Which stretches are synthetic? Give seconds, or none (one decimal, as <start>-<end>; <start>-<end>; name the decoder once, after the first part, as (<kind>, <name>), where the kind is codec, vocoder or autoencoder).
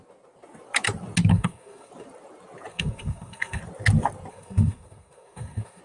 1.3-1.9 (codec, SNAC); 2.7-3.6; 4.3-5.8